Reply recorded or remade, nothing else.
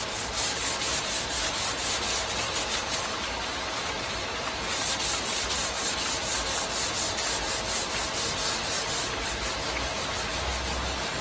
recorded